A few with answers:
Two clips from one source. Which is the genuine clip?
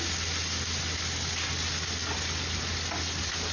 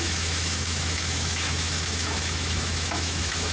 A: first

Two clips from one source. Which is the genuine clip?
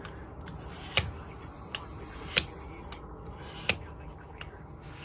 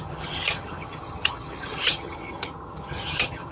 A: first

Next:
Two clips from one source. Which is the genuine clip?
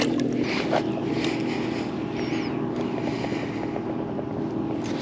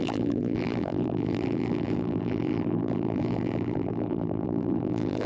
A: first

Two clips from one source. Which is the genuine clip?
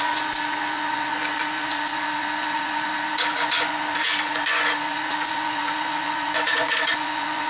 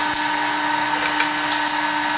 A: second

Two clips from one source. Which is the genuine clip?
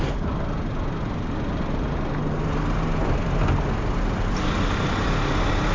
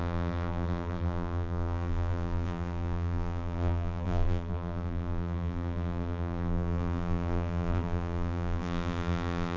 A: first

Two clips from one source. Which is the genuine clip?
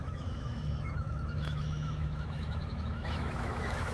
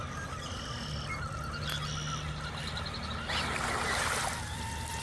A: second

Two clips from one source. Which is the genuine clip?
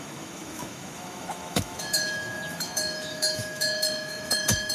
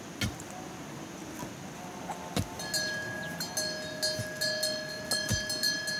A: second